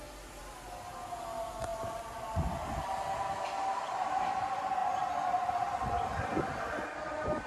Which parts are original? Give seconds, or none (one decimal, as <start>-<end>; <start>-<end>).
0.0-7.5